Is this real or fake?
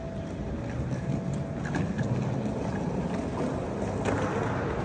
real